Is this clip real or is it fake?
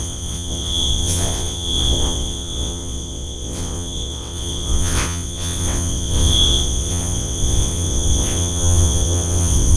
fake